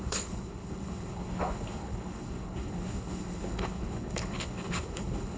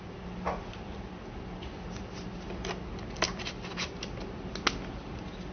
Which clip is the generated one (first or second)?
first